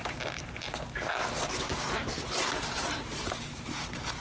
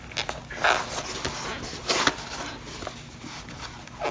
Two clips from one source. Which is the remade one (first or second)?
first